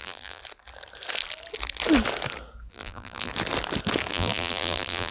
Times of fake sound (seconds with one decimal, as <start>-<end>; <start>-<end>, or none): 0.0-0.4; 2.7-3.3; 4.1-5.1